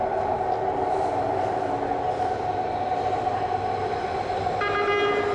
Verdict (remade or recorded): recorded